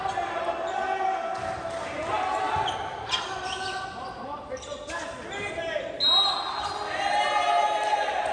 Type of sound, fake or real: real